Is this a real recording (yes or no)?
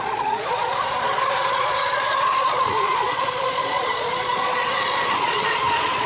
no